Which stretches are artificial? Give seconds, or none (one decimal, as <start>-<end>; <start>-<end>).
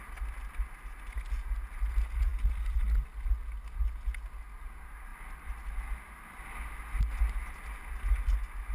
none